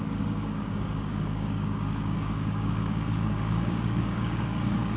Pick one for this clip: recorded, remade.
remade